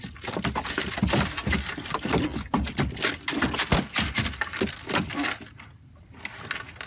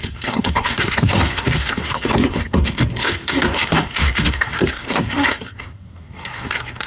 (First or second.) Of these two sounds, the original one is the first